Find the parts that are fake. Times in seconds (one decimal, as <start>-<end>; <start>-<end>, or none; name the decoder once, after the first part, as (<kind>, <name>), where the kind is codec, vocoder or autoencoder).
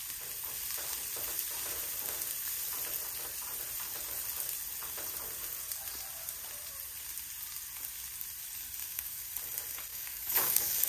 8.8-9.3 (codec, DAC); 9.9-10.9